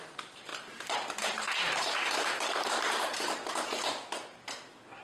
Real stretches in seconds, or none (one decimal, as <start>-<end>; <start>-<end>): 0.0-0.5; 3.5-5.0

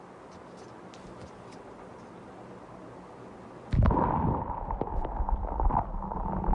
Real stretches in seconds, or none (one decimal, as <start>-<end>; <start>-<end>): 0.0-6.5

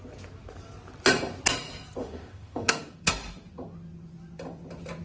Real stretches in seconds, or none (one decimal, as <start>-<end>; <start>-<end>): 0.0-2.0; 3.1-5.0

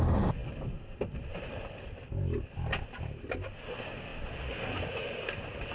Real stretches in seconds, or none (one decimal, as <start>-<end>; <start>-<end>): 0.0-5.7

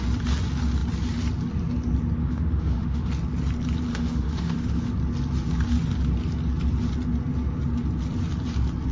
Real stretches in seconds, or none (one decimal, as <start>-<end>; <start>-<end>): 0.0-2.2; 3.1-3.9; 4.9-8.9

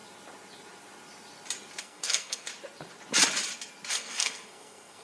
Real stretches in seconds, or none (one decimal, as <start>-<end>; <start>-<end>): 0.0-1.8; 2.5-3.9

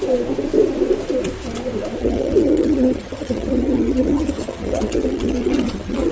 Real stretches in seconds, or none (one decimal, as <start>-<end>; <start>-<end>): 0.0-2.0